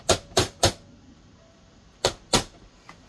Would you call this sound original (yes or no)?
no